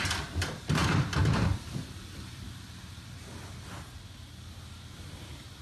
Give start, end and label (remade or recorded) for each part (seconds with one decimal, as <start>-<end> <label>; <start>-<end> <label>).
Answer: 0.0-0.8 recorded; 0.8-2.6 remade; 2.6-5.6 recorded